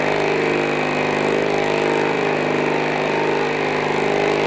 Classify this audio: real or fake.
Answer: real